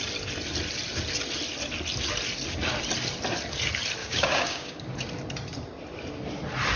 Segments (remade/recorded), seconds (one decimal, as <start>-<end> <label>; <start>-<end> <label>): 0.0-4.0 recorded; 4.0-4.9 remade; 4.9-6.8 recorded